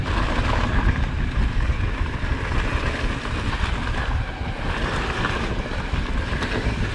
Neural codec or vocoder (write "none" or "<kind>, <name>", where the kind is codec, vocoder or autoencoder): none